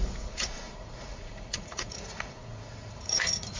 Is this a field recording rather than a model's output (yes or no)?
no